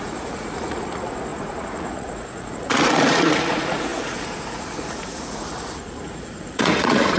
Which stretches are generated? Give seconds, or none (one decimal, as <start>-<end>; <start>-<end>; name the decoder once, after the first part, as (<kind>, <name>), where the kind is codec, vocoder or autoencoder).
0.0-7.2 (vocoder, Vocos)